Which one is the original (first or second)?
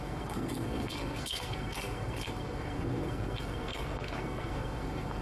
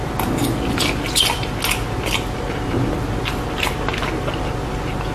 second